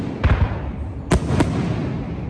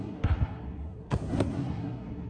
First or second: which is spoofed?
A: second